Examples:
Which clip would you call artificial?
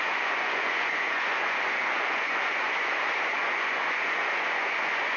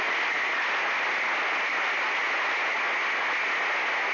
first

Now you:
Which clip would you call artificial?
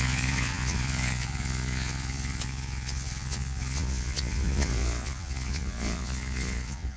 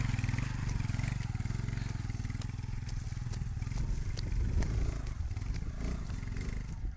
first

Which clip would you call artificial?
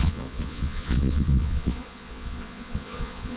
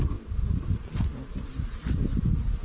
first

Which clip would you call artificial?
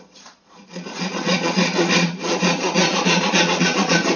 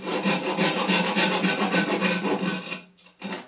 first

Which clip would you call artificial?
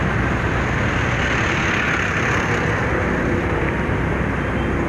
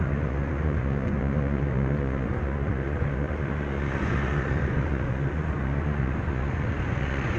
second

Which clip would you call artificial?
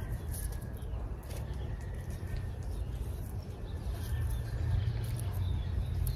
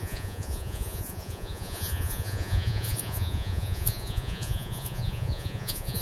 second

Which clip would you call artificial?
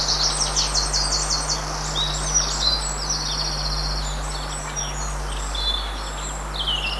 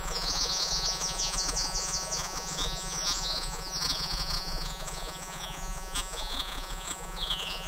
second